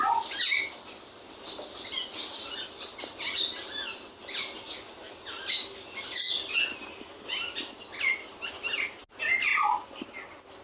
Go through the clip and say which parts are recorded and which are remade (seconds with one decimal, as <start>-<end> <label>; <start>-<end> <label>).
0.0-10.6 recorded